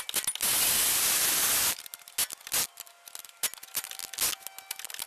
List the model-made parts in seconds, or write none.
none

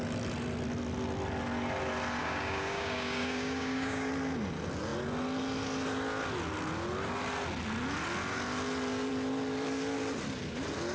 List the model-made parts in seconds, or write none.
2.2-4.1 (codec, DAC)

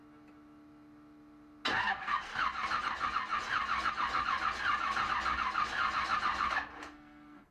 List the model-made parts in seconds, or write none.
1.8-2.3 (codec, SNAC); 6.8-7.5

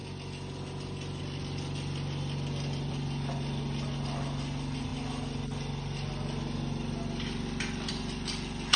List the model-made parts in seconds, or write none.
none

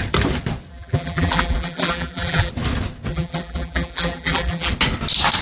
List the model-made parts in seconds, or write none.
0.7-2.5 (vocoder, BigVGAN v2); 3.1-4.7

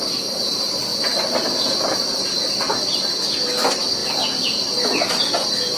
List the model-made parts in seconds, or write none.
0.0-4.0 (vocoder, BigVGAN v2); 5.3-5.8